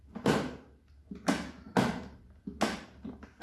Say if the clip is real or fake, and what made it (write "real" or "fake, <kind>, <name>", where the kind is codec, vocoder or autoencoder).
real